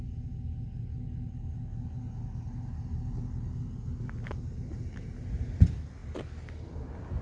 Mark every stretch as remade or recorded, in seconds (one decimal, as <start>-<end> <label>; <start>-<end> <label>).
0.0-7.2 recorded